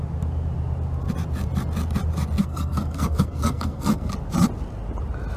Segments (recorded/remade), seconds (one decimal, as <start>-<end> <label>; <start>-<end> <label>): 0.0-2.4 recorded; 2.4-4.1 remade; 4.1-5.4 recorded